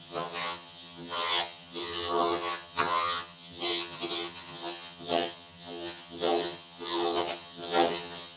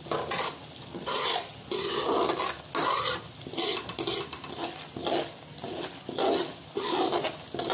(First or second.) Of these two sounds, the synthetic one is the first